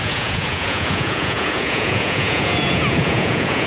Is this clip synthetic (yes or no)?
yes